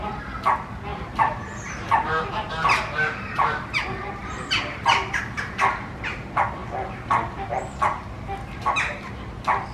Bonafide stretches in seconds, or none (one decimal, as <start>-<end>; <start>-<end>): 0.0-0.9; 5.4-9.7